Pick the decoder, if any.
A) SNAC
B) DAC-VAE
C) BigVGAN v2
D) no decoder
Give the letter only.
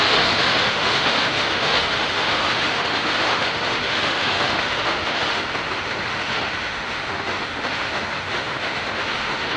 B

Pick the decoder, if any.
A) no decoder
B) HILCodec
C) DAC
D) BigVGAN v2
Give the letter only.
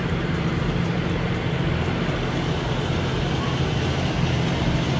D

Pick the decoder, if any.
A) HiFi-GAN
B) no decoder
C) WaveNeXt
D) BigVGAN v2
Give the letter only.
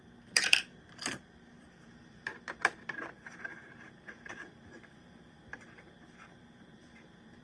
D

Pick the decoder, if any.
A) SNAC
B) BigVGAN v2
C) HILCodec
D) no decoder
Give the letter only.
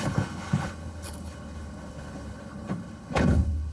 C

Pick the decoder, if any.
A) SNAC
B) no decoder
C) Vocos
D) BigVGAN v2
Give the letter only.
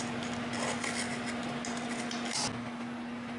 B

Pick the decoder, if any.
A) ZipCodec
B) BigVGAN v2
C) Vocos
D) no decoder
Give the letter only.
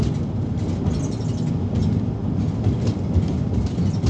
D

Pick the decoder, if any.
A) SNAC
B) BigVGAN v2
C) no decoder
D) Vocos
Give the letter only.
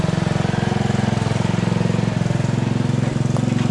C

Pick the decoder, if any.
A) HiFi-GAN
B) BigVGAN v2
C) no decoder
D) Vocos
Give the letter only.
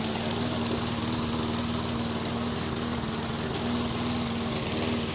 C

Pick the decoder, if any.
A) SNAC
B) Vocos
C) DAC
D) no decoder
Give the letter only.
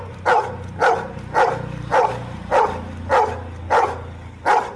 D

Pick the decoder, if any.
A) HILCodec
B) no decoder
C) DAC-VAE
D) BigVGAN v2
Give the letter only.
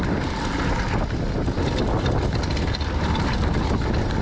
B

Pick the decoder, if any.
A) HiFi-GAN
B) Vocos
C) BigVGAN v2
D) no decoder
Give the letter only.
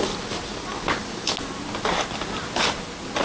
D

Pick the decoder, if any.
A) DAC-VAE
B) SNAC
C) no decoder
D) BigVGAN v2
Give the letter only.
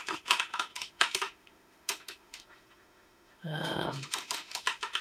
A